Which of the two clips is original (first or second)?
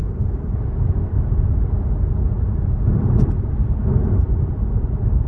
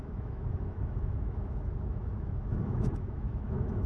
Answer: first